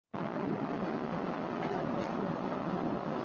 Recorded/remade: remade